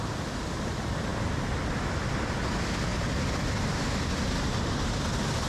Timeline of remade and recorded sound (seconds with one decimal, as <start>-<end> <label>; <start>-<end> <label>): 0.0-5.5 recorded